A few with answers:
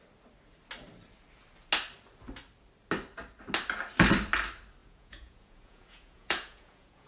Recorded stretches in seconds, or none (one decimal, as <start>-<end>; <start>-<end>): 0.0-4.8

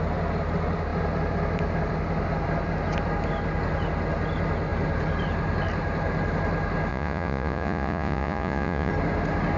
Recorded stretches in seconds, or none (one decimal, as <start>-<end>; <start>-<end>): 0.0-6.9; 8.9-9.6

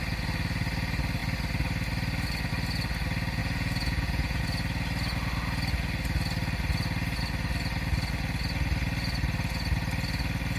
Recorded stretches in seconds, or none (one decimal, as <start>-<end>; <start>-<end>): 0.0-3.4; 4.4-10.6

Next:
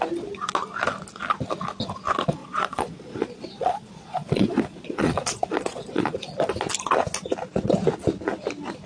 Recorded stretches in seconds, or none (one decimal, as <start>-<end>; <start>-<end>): 0.0-2.4; 6.2-8.9

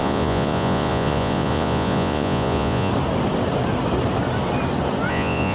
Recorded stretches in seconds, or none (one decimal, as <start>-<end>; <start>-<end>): 2.9-5.1

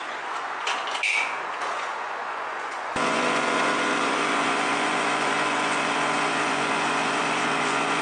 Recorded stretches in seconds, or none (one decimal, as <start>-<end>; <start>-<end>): none

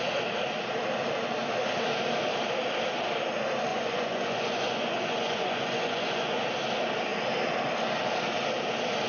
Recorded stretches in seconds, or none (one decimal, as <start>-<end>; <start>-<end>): 0.0-3.7; 6.4-9.1

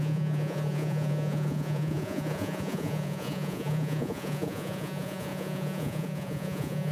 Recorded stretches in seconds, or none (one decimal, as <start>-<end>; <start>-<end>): none